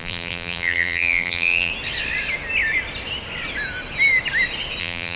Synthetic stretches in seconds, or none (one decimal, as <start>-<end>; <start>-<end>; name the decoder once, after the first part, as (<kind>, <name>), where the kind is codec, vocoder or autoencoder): 0.0-1.7 (vocoder, BigVGAN v2); 4.8-5.2